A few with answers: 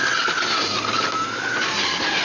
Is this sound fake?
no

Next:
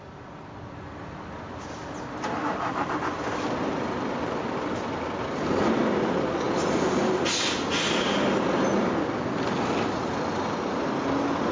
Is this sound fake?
no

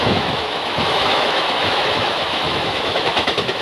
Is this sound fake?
yes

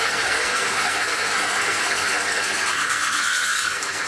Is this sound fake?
yes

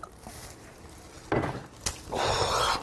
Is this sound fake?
no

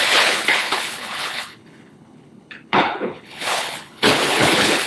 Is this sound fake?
yes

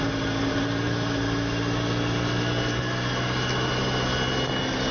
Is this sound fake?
no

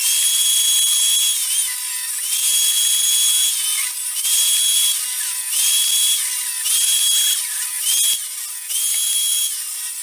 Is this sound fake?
yes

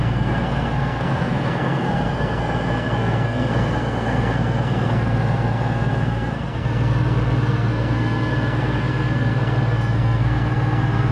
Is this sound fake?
yes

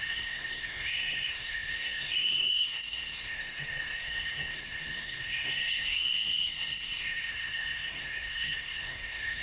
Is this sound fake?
yes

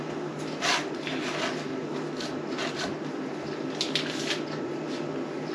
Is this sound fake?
no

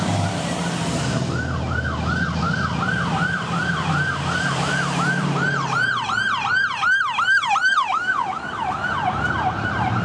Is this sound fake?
yes